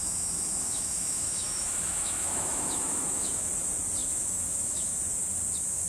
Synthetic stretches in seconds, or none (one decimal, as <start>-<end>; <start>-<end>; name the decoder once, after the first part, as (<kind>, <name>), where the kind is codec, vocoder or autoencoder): 0.0-3.5 (autoencoder, DAC-VAE); 4.0-5.0

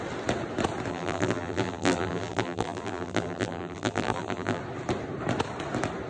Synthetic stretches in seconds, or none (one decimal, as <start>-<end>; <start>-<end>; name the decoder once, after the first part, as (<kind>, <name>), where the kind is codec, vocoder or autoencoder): 0.9-4.6 (vocoder, BigVGAN v2)